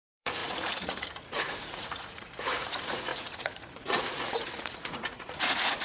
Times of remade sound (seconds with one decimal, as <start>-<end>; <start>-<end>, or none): 0.0-5.8